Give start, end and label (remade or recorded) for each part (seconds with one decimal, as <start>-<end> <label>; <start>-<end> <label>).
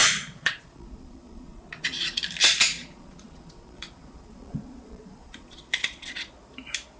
0.0-2.2 remade; 2.2-2.8 recorded; 2.8-6.4 remade; 6.4-7.0 recorded